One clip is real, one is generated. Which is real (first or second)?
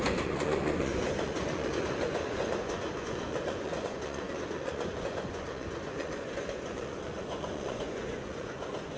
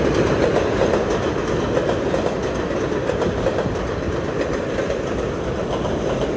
second